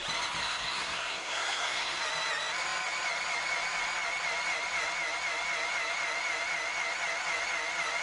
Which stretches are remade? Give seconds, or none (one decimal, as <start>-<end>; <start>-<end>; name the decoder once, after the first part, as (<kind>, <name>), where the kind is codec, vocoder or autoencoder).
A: 0.4-2.0 (codec, SNAC)